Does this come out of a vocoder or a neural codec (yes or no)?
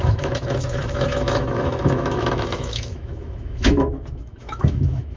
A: yes